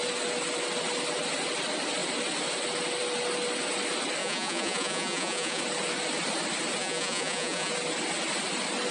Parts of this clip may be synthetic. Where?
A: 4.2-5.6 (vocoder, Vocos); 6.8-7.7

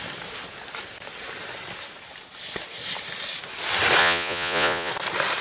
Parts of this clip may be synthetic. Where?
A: 4.0-4.9 (vocoder, Vocos)

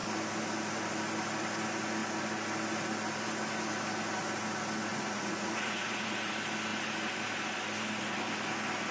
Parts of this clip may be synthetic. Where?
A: 4.9-6.3 (vocoder, Vocos)

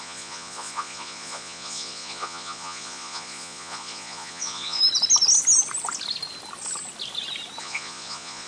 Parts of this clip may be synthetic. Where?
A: 0.0-4.8 (vocoder, Vocos); 7.6-8.5

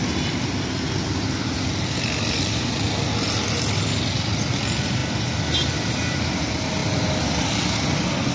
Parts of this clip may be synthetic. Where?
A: none

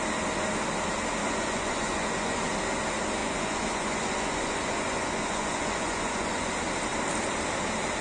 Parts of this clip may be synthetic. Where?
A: 1.2-2.5 (vocoder, Vocos); 3.2-6.5

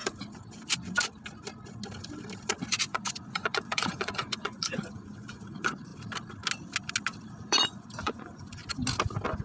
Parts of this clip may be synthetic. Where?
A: 2.9-5.9 (vocoder, Vocos); 7.3-8.6